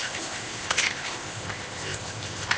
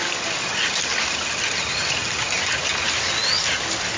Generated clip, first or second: first